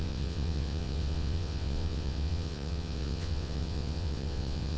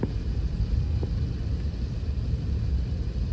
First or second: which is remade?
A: first